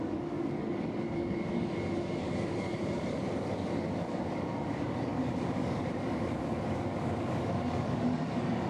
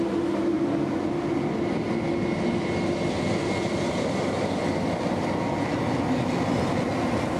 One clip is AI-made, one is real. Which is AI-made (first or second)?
first